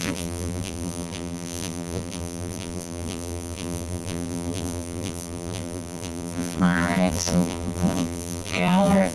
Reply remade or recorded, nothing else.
remade